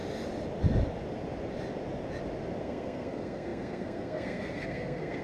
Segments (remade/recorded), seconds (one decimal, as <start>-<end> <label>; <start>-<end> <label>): 0.0-2.6 recorded; 2.6-5.2 remade